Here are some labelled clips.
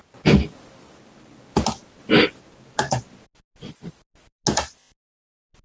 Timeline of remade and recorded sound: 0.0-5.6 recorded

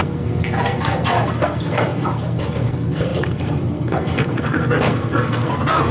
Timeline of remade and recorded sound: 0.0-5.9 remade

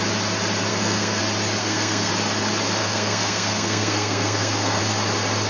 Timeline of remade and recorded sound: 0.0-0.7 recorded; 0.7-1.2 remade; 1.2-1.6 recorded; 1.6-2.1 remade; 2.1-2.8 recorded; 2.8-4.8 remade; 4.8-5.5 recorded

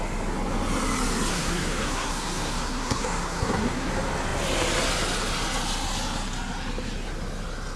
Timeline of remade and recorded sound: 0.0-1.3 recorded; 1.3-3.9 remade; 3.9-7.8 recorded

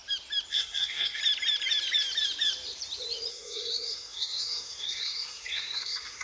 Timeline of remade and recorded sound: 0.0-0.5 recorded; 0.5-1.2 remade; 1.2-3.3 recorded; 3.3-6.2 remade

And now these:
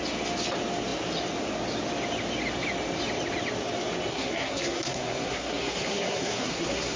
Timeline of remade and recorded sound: 0.0-4.1 recorded; 4.1-7.0 remade

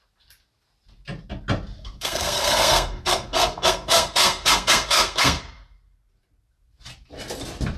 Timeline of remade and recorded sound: 0.0-1.8 recorded; 1.8-5.4 remade; 5.4-7.8 recorded